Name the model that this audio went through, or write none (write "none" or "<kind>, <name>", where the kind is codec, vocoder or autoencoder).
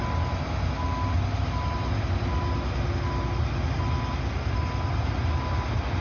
none